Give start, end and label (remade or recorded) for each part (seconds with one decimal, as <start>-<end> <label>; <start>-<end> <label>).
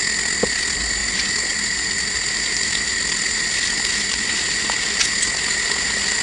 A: 0.0-6.2 recorded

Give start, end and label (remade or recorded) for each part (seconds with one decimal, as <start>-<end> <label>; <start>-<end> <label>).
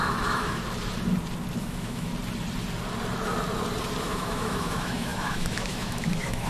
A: 0.0-0.6 remade; 0.6-1.6 recorded; 1.6-2.1 remade; 2.1-4.0 recorded; 4.0-6.5 remade